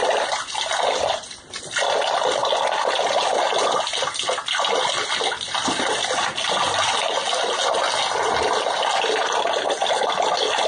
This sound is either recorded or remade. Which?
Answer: recorded